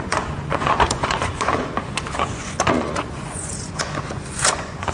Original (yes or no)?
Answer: no